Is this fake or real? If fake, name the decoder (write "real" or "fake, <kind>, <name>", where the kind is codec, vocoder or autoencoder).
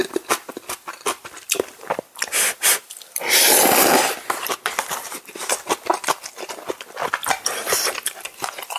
real